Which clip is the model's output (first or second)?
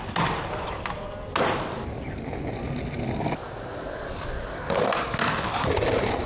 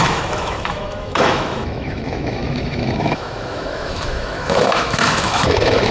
second